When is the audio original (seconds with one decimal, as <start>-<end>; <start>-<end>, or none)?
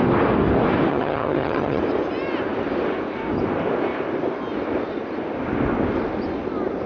0.0-0.9; 1.8-6.9